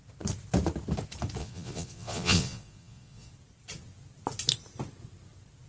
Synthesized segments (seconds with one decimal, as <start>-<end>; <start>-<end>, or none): 1.4-3.3